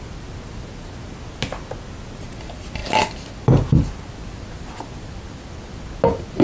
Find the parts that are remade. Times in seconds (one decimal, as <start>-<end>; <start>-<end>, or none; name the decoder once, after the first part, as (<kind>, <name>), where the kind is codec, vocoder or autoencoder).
none